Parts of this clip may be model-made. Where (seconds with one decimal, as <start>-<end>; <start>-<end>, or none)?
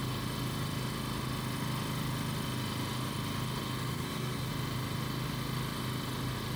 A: 3.9-4.5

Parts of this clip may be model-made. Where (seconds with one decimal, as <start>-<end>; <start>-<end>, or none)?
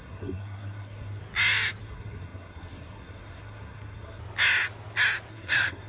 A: 0.0-1.2; 1.8-4.2; 5.3-5.9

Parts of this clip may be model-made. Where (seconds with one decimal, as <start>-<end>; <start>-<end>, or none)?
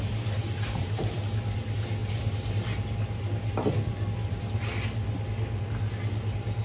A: 0.4-1.2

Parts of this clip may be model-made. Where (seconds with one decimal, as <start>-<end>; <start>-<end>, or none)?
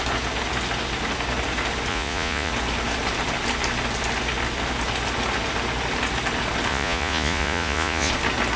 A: 1.9-2.5; 6.7-8.1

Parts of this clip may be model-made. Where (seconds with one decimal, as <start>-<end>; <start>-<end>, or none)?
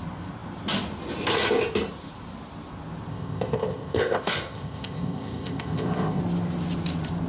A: 3.1-6.2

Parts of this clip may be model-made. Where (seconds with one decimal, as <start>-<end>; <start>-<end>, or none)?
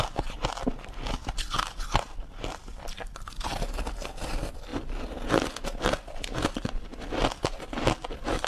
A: 2.7-3.7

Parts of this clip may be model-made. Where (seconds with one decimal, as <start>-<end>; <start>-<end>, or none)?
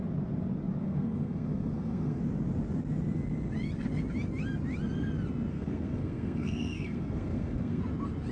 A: 0.8-2.2; 5.5-7.8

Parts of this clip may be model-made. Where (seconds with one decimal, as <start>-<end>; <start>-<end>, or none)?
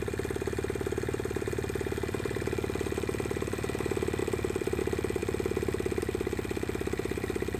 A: 0.0-7.6